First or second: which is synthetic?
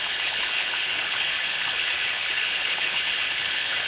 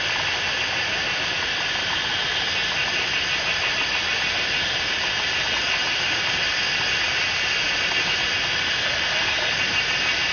first